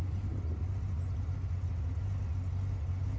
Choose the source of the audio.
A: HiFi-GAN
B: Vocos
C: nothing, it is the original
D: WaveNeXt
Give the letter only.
C